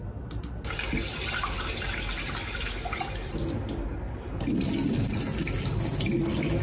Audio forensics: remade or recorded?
recorded